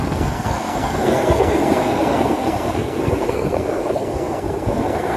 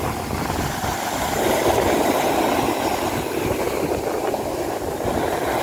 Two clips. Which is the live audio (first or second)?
second